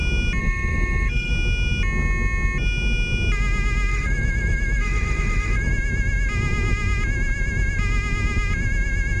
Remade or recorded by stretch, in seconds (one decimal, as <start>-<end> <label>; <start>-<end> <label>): 0.0-0.4 recorded; 0.4-1.3 remade; 1.3-3.9 recorded; 3.9-5.7 remade; 5.7-9.2 recorded